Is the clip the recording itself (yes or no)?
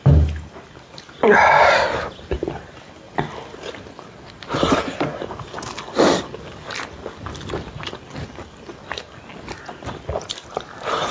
yes